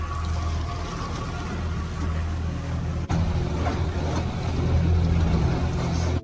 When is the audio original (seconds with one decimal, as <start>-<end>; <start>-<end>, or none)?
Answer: 0.0-2.2; 2.9-6.2